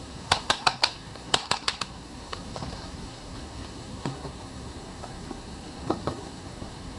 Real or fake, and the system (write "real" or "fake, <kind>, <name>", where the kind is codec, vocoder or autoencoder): fake, codec, SNAC